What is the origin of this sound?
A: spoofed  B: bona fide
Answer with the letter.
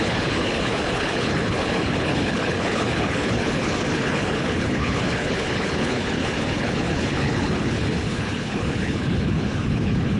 A